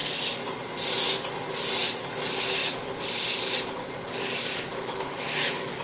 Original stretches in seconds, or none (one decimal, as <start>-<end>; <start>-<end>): 0.0-4.7